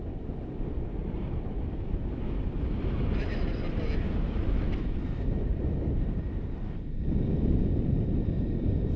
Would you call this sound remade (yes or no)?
no